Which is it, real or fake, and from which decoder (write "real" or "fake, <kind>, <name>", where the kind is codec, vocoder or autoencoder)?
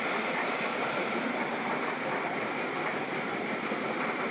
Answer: fake, vocoder, BigVGAN v2